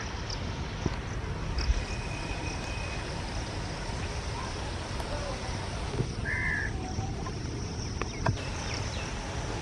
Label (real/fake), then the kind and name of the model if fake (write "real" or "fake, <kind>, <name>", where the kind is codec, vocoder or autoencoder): real